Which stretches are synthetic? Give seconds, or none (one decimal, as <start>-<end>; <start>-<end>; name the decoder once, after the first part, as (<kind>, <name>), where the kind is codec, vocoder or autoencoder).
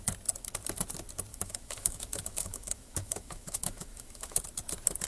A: 1.3-4.4 (autoencoder, DAC-VAE)